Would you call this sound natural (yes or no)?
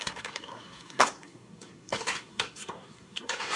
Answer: no